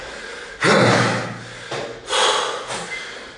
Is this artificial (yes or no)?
no